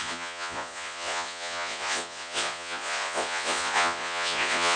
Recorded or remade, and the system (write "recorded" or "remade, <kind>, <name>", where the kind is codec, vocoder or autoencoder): remade, vocoder, Vocos